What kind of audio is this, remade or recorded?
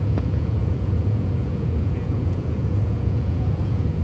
remade